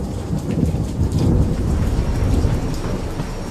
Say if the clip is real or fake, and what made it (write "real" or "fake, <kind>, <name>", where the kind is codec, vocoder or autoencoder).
fake, vocoder, BigVGAN v2